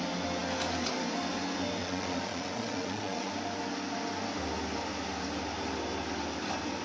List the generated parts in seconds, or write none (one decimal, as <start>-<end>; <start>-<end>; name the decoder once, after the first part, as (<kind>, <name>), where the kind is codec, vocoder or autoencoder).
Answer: 1.8-3.3 (vocoder, Vocos)